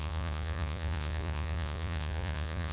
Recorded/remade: remade